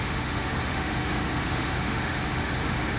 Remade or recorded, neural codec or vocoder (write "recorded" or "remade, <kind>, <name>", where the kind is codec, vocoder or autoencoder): remade, autoencoder, DAC-VAE